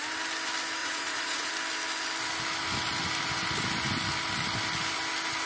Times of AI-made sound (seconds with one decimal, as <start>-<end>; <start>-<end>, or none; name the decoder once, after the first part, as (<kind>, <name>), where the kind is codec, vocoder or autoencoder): 0.8-1.5 (vocoder, Vocos)